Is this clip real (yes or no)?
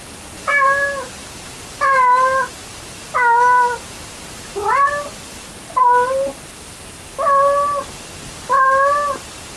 yes